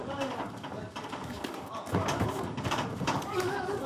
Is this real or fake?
fake